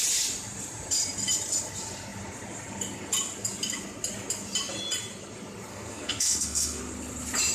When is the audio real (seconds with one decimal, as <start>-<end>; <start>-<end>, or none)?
0.0-5.7; 6.8-7.5